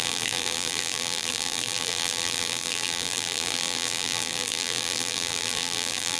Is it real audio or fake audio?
fake